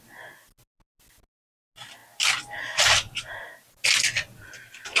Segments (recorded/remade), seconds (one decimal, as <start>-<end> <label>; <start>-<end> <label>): 0.0-5.0 recorded